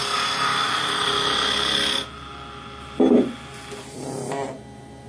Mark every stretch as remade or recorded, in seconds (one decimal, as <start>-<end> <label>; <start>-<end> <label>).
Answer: 0.0-5.1 recorded